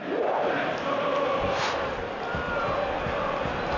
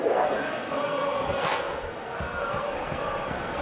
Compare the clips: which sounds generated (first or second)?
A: second